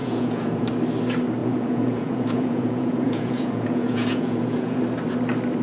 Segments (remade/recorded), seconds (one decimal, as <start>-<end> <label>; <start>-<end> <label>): 0.0-0.7 remade; 0.7-1.4 recorded; 1.4-4.8 remade; 4.8-5.6 recorded